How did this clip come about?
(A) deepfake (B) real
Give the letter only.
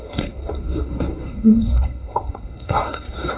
A